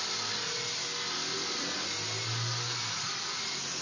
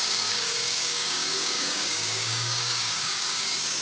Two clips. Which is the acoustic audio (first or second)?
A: first